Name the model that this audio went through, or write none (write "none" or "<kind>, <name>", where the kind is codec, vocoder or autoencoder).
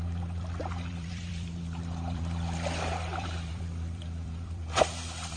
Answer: vocoder, BigVGAN v2